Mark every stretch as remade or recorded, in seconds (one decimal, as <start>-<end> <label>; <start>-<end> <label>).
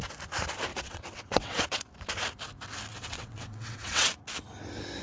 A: 0.0-0.7 recorded; 0.7-1.9 remade; 1.9-2.9 recorded; 2.9-4.2 remade; 4.2-5.0 recorded